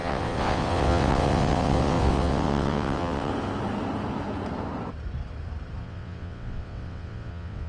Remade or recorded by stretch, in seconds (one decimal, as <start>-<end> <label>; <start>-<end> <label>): 0.0-3.3 remade; 3.3-5.8 recorded; 5.8-7.7 remade